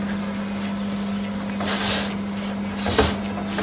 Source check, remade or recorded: recorded